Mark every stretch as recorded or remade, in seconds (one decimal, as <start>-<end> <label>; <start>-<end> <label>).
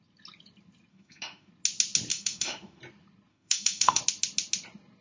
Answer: 0.0-0.9 recorded; 0.9-1.5 remade; 1.5-2.1 recorded; 2.1-2.8 remade; 2.8-3.3 recorded; 3.3-4.0 remade; 4.0-5.0 recorded